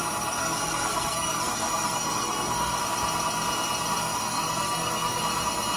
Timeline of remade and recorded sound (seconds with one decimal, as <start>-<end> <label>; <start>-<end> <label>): 0.0-0.4 recorded; 0.4-2.8 remade; 2.8-4.0 recorded; 4.0-5.2 remade; 5.2-5.8 recorded